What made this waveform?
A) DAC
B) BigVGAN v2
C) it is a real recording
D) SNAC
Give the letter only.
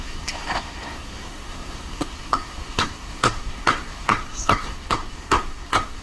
D